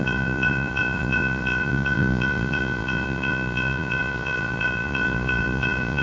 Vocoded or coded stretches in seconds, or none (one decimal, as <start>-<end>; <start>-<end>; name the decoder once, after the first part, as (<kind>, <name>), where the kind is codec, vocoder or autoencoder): 0.0-6.0 (vocoder, Vocos)